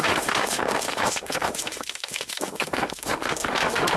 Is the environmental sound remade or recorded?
remade